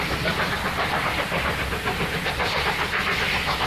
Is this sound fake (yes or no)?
yes